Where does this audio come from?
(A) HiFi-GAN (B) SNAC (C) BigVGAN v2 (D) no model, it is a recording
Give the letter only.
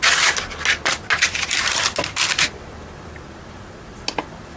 D